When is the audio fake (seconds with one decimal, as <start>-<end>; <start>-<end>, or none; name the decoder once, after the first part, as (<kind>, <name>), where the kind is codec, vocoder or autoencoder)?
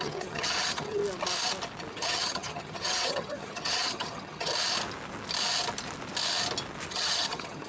0.0-1.0 (vocoder, HiFi-GAN); 1.9-4.5; 6.9-7.7